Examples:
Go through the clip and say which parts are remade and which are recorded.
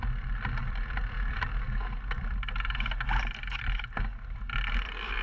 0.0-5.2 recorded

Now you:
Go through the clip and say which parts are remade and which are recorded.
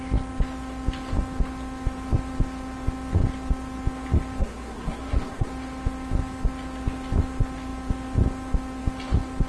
0.0-4.4 recorded; 4.4-5.5 remade; 5.5-9.5 recorded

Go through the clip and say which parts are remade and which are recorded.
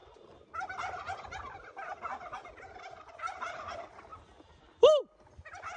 0.0-5.8 recorded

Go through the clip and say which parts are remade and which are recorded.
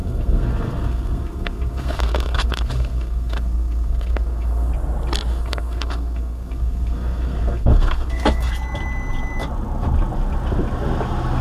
0.0-4.7 remade; 4.7-5.3 recorded; 5.3-8.5 remade; 8.5-11.4 recorded